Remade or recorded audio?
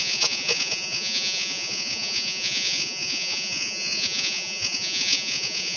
remade